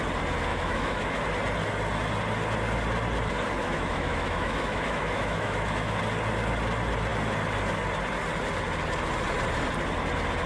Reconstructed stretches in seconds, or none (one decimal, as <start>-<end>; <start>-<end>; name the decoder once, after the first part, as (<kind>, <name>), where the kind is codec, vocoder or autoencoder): 0.5-1.2 (autoencoder, DAC-VAE); 3.6-6.0